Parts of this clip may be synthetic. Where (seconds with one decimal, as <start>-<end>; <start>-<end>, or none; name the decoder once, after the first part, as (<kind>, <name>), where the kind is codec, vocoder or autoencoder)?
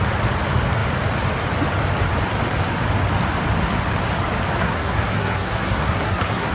4.6-6.5 (codec, SNAC)